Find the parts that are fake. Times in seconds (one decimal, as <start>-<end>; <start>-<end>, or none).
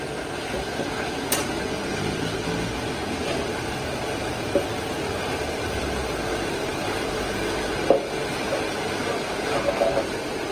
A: 3.5-7.5